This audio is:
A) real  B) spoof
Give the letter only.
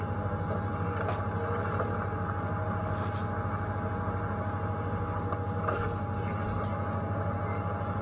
A